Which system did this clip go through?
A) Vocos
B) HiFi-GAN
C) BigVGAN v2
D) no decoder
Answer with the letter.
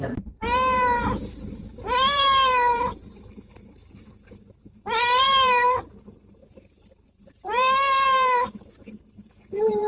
C